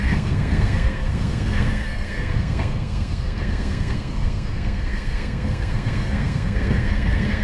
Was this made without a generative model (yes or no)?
no